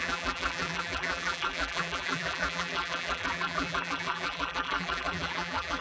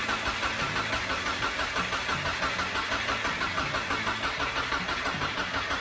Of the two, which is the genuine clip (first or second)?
second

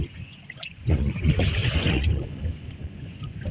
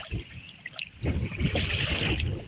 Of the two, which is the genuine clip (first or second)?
second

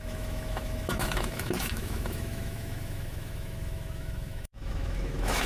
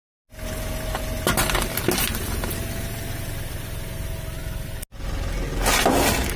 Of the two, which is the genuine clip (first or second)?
second